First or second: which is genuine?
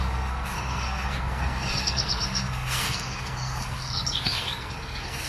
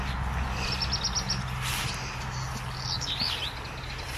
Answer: second